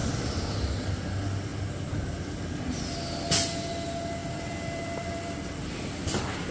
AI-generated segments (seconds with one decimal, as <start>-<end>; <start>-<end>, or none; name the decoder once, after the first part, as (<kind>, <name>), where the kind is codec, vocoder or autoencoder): 1.5-2.7 (vocoder, BigVGAN v2); 4.2-6.5